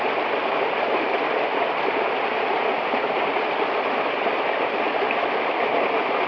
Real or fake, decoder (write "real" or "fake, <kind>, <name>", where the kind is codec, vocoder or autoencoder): real